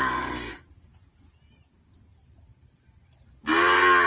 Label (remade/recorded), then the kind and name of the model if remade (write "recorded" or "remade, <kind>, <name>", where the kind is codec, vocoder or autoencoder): recorded